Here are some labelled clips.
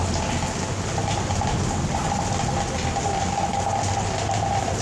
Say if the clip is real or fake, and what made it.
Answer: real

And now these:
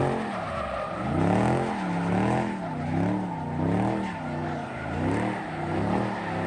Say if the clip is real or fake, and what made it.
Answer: real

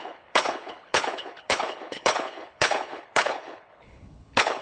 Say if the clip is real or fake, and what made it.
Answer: fake, codec, HILCodec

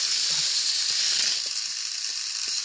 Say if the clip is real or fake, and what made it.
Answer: real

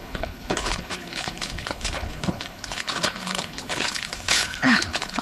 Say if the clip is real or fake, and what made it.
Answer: fake, codec, HILCodec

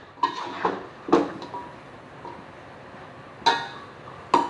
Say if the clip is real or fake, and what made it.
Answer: real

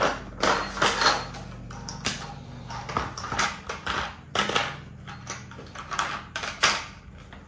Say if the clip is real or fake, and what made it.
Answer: real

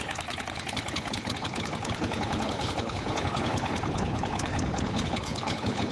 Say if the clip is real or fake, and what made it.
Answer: fake, codec, HILCodec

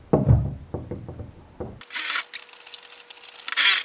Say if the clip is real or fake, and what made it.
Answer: real